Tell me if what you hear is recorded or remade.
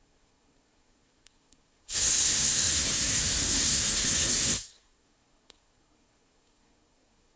remade